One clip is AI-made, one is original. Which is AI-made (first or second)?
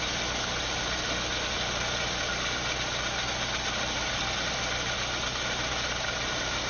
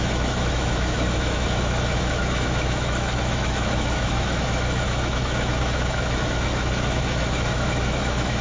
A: second